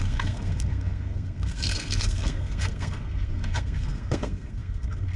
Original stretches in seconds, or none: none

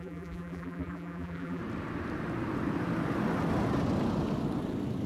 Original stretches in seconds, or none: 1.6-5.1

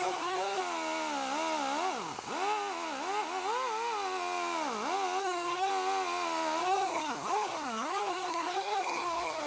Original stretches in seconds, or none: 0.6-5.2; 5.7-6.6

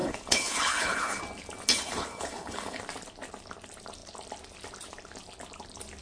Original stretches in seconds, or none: 1.2-1.7; 2.8-6.0

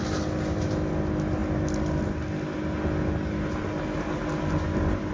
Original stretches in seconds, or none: 0.0-5.1

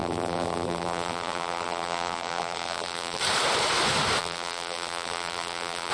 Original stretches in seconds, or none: 3.2-4.2

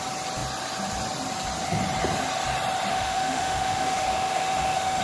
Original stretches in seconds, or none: 0.0-2.9

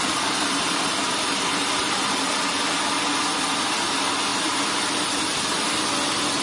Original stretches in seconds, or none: 0.0-6.4